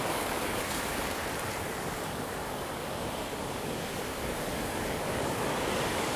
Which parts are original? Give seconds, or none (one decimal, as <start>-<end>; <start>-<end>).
1.2-1.7